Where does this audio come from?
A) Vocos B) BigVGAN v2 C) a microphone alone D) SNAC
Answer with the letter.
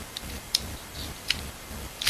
B